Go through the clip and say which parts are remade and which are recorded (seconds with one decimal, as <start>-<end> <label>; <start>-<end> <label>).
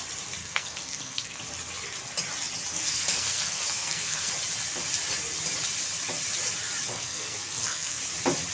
0.0-0.4 recorded; 0.4-1.4 remade; 1.4-2.7 recorded; 2.7-4.3 remade; 4.3-6.9 recorded; 6.9-8.0 remade; 8.0-8.5 recorded